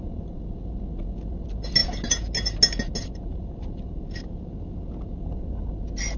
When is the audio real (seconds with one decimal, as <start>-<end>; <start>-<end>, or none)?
0.0-6.2